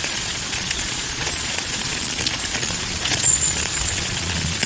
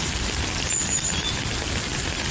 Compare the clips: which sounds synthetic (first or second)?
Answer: first